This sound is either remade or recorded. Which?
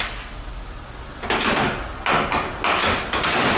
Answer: recorded